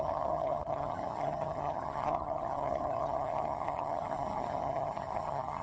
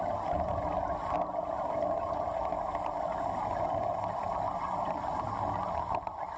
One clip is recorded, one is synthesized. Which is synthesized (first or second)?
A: first